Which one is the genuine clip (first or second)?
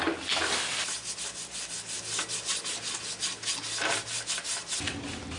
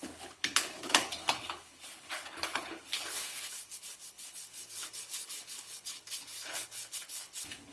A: first